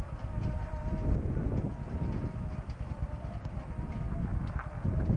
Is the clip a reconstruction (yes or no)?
no